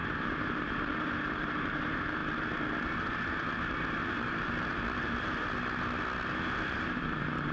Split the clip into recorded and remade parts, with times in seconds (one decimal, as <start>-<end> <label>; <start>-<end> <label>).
0.0-2.2 remade; 2.2-6.7 recorded; 6.7-7.5 remade